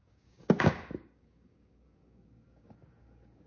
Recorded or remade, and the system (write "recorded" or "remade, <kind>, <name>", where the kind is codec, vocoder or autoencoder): remade, codec, DAC